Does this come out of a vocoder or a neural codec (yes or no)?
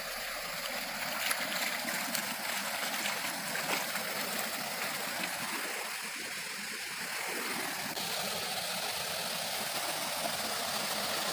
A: no